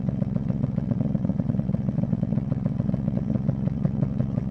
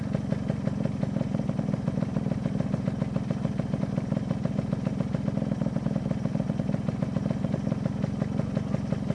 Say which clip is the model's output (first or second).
first